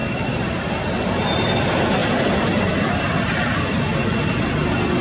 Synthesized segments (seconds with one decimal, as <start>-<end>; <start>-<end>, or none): 0.0-0.7